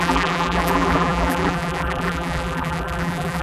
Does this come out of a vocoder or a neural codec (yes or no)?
yes